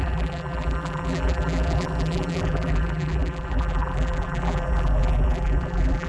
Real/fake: fake